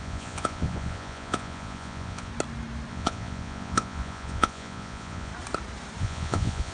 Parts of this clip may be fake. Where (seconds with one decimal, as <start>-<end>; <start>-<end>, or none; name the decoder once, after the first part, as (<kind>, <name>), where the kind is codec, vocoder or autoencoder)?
0.0-2.3 (vocoder, Vocos); 2.9-5.3; 6.0-6.7